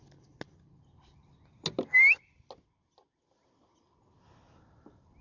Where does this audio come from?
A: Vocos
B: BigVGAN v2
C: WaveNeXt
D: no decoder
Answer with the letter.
D